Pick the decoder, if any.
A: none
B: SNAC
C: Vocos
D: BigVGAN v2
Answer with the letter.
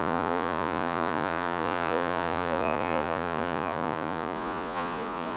C